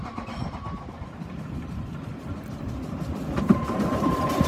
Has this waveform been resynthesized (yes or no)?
no